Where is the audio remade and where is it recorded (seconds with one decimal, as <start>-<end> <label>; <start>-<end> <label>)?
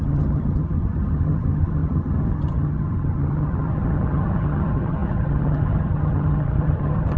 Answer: 0.0-7.2 remade